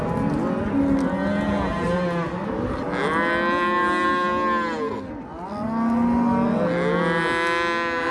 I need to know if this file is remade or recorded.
recorded